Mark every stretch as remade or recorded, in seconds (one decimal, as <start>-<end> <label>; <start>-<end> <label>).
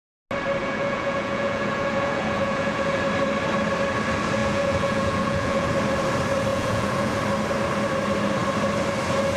0.0-0.6 recorded; 0.6-3.0 remade; 3.0-4.4 recorded; 4.4-5.7 remade; 5.7-6.5 recorded; 6.5-7.2 remade; 7.2-9.4 recorded